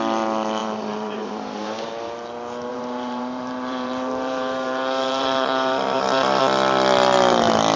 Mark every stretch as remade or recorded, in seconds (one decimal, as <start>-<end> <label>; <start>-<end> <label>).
0.0-0.6 recorded; 0.6-1.9 remade; 1.9-2.7 recorded; 2.7-6.4 remade; 6.4-7.8 recorded